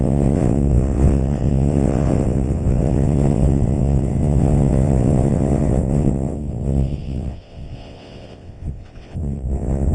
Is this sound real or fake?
fake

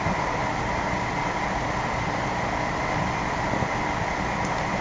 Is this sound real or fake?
real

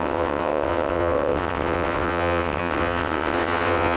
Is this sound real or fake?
fake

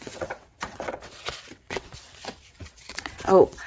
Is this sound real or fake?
fake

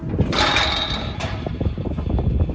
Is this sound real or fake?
real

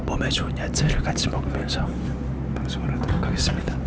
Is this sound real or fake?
real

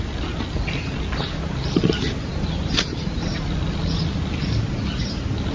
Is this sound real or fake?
real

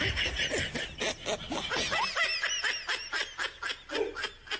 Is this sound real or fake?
real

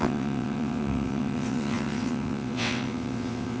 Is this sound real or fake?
fake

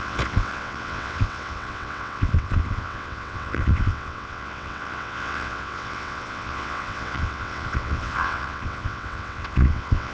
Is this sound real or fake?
fake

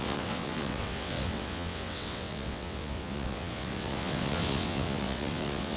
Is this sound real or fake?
fake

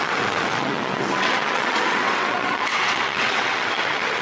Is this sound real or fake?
fake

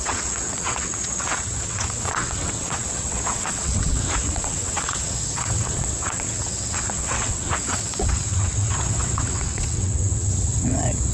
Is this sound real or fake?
fake